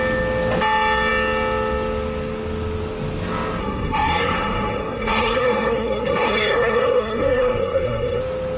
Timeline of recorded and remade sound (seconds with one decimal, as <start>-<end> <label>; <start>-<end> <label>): 0.0-3.6 recorded; 3.6-8.2 remade; 8.2-8.6 recorded

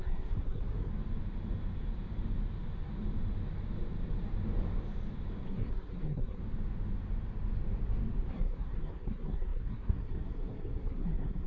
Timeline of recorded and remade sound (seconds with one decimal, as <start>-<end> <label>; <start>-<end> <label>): 0.0-0.9 remade; 0.9-5.4 recorded; 5.4-6.4 remade; 6.4-8.3 recorded; 8.3-11.5 remade

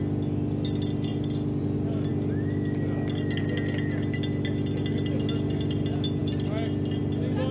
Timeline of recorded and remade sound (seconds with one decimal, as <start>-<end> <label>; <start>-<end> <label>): 0.0-7.5 recorded